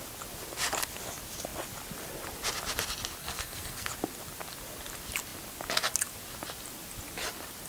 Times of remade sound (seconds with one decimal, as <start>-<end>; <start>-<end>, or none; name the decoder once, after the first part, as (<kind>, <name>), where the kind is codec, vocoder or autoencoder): 3.2-3.9 (codec, SNAC)